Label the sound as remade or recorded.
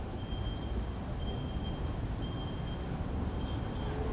recorded